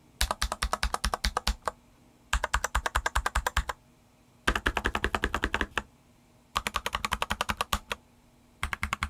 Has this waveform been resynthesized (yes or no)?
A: no